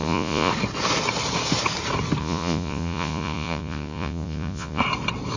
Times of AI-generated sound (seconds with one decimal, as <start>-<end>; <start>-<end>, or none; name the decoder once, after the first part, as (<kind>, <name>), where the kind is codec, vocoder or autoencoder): 0.0-0.5 (vocoder, Vocos); 2.2-4.8